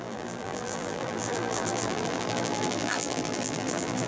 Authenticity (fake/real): fake